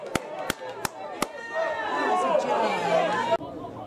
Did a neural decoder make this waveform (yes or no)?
no